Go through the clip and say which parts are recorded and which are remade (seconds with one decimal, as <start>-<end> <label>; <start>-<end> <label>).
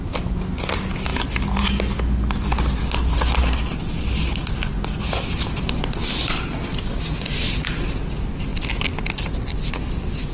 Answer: 0.0-10.3 recorded